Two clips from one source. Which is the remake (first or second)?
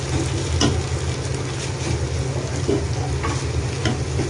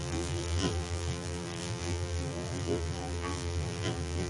second